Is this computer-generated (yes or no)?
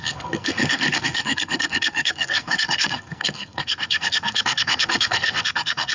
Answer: yes